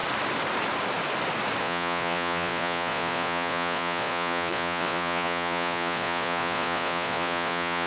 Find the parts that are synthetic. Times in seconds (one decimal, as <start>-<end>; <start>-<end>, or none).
1.6-7.9